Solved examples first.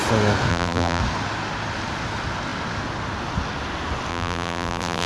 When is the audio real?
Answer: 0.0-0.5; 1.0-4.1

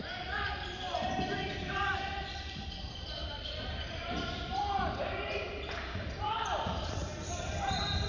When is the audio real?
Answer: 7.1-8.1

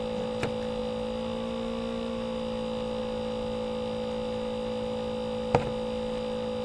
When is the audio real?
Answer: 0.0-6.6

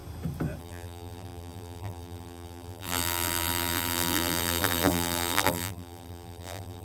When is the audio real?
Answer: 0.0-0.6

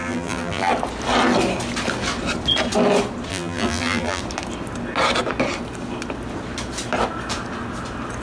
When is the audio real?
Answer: 0.7-3.3; 4.2-8.2

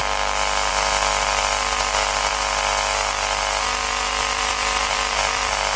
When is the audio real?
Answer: 0.0-0.7; 2.3-4.2

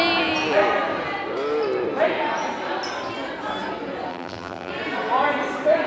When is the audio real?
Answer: 0.0-4.1; 4.7-5.9